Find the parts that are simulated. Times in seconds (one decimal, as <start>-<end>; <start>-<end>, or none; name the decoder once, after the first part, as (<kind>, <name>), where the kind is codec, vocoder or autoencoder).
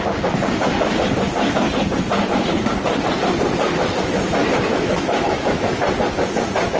4.7-5.8 (autoencoder, DAC-VAE)